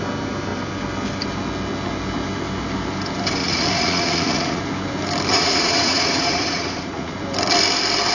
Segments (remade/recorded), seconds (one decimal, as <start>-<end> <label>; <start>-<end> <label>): 0.0-3.4 recorded; 3.4-4.6 remade; 4.6-5.3 recorded; 5.3-7.2 remade; 7.2-8.1 recorded